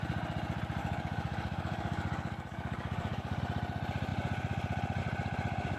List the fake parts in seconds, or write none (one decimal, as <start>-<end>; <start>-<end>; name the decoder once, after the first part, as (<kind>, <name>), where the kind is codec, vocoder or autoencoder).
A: 0.8-3.4 (codec, DAC)